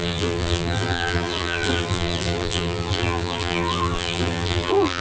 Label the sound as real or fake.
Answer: fake